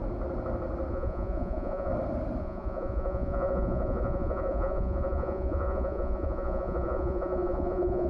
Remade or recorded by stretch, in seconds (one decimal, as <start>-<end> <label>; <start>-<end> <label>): 0.0-0.9 recorded; 0.9-1.9 remade; 1.9-2.4 recorded; 2.4-8.1 remade